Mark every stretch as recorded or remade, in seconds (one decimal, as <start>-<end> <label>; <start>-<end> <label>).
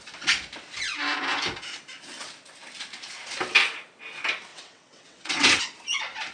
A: 0.0-4.5 recorded; 4.5-5.6 remade; 5.6-6.3 recorded